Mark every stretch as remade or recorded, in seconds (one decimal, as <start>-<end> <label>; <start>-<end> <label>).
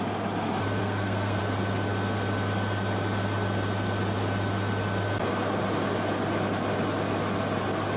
0.0-0.8 recorded; 0.8-1.4 remade; 1.4-8.0 recorded